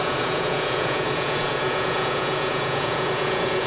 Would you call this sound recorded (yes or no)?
no